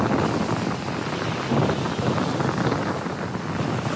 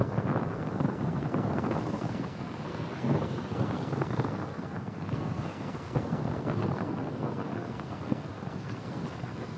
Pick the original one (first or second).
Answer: first